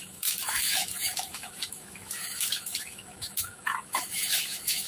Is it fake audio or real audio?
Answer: fake